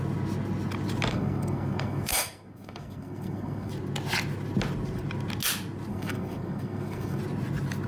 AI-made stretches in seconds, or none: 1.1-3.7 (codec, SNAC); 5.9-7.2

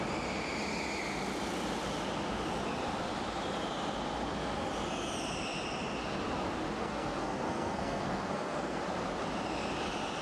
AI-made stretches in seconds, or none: 6.8-8.8 (codec, SNAC)

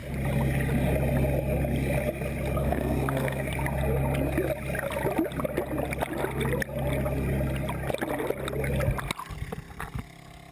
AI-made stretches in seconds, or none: 2.6-3.5 (codec, SNAC)

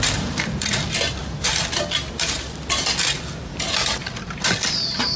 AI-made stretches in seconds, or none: none

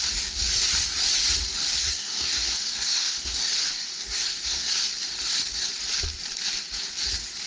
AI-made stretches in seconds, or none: 1.8-4.9 (codec, SNAC)

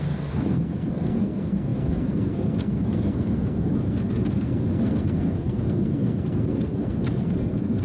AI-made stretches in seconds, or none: 0.0-7.8 (codec, SNAC)